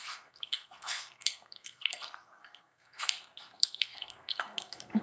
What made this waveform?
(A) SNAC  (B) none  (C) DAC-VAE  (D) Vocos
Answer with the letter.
A